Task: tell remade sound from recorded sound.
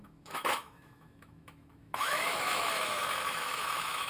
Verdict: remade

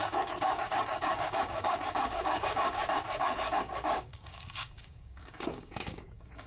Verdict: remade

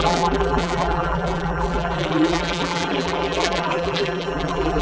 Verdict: remade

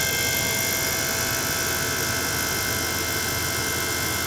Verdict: recorded